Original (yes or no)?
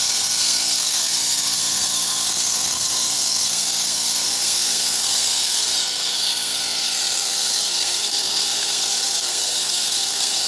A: no